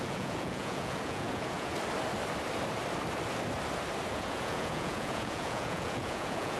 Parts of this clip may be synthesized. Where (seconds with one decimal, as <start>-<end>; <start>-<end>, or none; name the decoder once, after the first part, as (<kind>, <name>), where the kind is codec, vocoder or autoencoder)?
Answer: 0.0-1.7 (vocoder, Vocos); 4.1-6.6